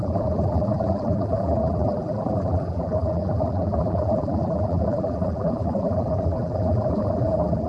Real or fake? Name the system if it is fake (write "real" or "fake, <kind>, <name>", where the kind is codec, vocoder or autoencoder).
fake, vocoder, BigVGAN v2